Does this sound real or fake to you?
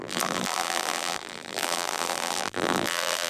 fake